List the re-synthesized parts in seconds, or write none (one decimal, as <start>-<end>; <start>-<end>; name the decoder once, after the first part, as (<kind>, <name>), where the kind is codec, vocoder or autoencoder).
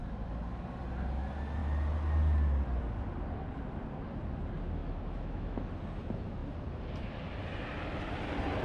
4.8-5.6 (autoencoder, DAC-VAE)